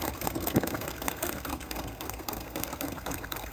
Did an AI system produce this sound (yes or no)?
yes